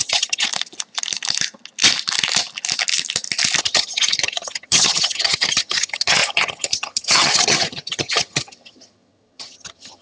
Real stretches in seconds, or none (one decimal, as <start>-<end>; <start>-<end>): 0.5-3.6